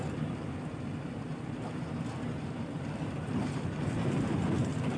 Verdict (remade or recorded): remade